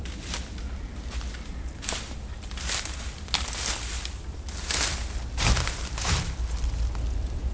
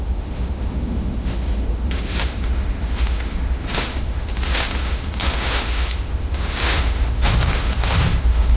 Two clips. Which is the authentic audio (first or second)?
first